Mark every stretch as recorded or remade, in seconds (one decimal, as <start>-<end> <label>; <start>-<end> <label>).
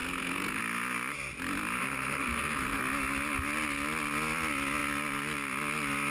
0.0-0.6 remade; 0.6-1.8 recorded; 1.8-2.8 remade; 2.8-6.1 recorded